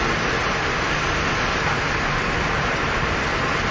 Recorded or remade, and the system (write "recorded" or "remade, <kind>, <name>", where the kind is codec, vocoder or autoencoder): recorded